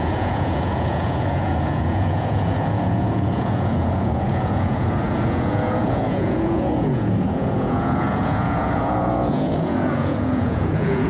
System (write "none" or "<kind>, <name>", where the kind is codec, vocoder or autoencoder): vocoder, Vocos